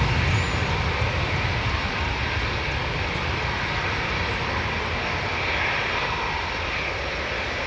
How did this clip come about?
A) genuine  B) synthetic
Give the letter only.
A